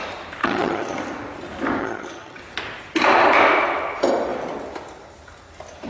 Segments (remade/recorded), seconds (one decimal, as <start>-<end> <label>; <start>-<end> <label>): 0.0-0.4 recorded; 0.4-1.0 remade; 1.0-1.8 recorded; 1.8-2.4 remade; 2.4-5.9 recorded